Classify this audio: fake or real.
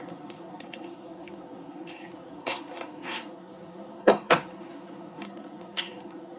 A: fake